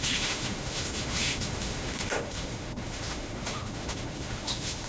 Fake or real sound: fake